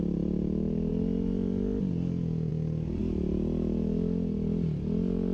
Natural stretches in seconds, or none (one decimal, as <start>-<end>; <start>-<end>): 0.0-5.3